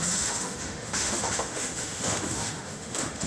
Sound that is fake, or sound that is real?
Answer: fake